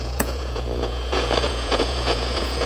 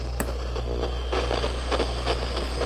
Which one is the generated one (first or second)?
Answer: first